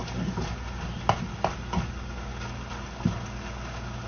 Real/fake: real